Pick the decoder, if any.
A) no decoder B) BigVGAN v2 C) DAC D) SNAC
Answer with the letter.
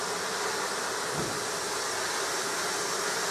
A